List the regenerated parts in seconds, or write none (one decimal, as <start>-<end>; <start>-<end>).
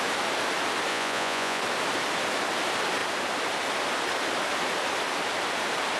0.9-1.6